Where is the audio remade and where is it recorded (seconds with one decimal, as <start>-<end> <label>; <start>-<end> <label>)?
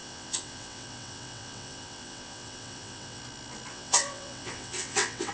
0.0-3.2 remade; 3.2-3.7 recorded; 3.7-5.3 remade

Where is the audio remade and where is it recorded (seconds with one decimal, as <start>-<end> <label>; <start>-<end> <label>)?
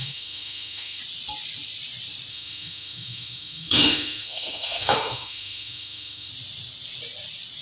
0.0-1.0 remade; 1.0-2.3 recorded; 2.3-6.3 remade; 6.3-7.6 recorded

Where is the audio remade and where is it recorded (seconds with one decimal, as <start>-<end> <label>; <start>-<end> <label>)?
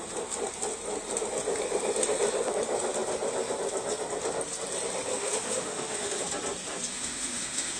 0.0-5.1 recorded; 5.1-6.2 remade; 6.2-6.9 recorded; 6.9-7.8 remade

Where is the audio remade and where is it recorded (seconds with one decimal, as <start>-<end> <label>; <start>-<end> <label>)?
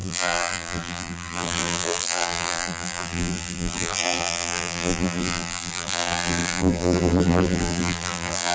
0.0-8.5 remade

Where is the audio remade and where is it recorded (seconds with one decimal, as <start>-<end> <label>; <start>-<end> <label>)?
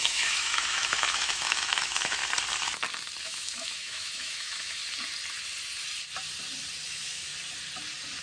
0.0-2.2 remade; 2.2-3.2 recorded; 3.2-4.8 remade; 4.8-6.8 recorded; 6.8-7.3 remade; 7.3-8.2 recorded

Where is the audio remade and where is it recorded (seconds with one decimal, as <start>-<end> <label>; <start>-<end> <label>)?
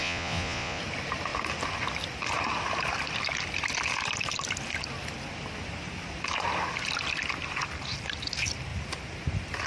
0.0-0.8 remade; 0.8-9.7 recorded